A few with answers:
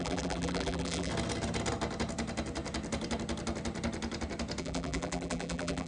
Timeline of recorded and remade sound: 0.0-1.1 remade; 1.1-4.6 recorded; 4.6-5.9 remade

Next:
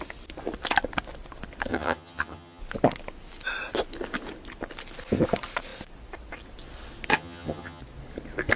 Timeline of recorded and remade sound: 0.0-1.7 recorded; 1.7-2.6 remade; 2.6-7.1 recorded; 7.1-7.8 remade; 7.8-8.6 recorded

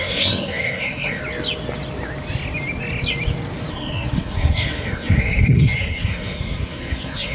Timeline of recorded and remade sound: 0.0-1.2 remade; 1.2-3.7 recorded; 3.7-7.3 remade

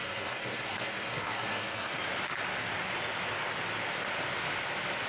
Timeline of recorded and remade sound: 0.0-1.9 remade; 1.9-5.1 recorded

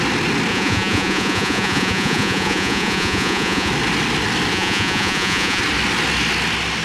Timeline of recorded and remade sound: 0.0-0.5 recorded; 0.5-3.7 remade; 3.7-4.5 recorded; 4.5-5.6 remade; 5.6-6.8 recorded

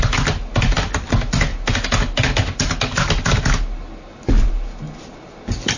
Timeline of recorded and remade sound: 0.0-5.8 recorded

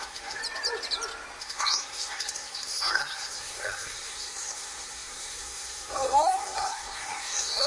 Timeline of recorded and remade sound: 0.0-0.4 remade; 0.4-1.4 recorded; 1.4-7.7 remade

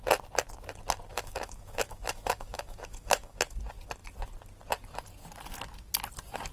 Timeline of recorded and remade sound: 0.0-1.1 recorded; 1.1-3.6 remade; 3.6-6.5 recorded